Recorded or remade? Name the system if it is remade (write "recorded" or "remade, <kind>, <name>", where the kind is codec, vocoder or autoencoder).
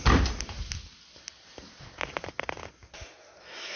recorded